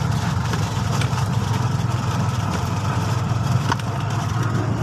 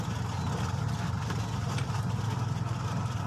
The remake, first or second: first